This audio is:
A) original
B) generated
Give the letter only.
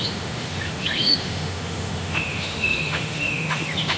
B